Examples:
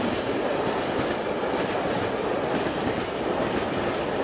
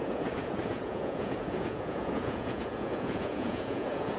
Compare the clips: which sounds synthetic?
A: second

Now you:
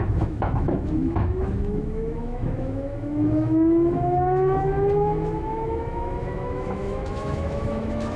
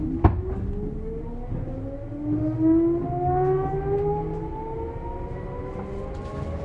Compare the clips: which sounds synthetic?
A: first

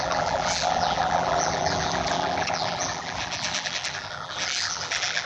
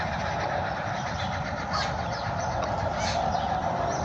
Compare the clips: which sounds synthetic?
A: first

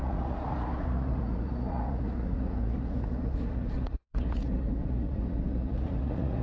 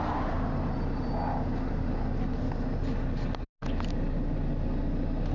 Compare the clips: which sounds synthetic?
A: first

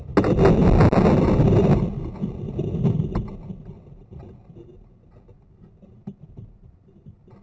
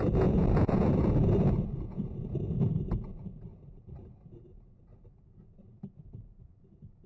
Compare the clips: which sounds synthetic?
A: second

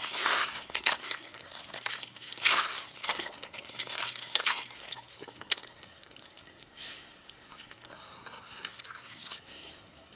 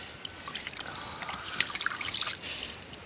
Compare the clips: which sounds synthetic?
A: first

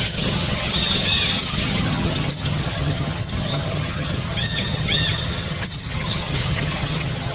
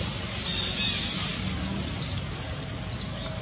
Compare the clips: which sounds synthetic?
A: first